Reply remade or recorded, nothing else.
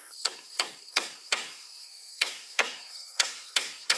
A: remade